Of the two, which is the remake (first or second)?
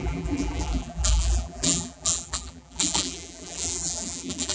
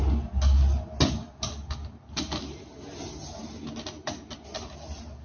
first